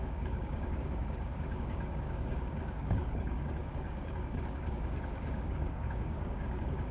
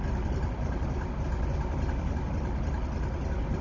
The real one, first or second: second